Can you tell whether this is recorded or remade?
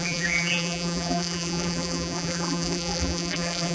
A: remade